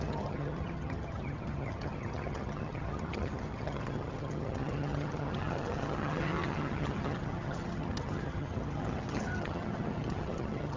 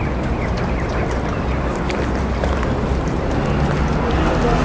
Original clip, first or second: second